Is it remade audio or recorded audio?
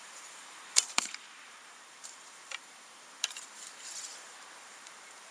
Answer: remade